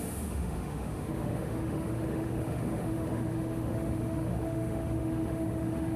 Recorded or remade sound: remade